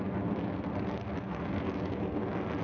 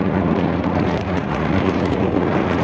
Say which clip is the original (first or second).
first